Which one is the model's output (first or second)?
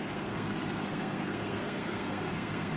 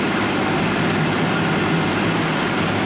first